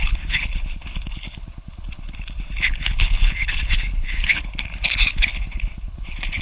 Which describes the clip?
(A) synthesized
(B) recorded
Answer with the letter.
A